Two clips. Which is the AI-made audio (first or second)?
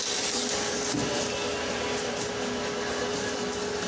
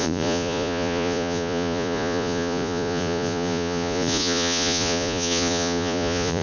second